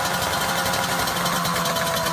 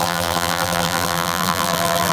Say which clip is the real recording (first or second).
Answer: first